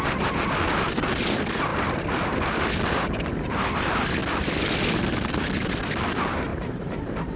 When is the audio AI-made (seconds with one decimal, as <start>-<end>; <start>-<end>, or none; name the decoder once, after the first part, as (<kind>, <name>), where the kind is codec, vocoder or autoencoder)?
6.5-7.4 (vocoder, BigVGAN v2)